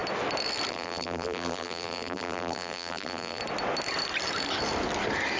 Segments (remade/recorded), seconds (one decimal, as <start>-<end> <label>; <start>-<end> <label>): 0.0-0.7 recorded; 0.7-3.4 remade; 3.4-5.4 recorded